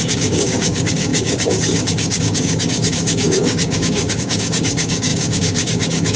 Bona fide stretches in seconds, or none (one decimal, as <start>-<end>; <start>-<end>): none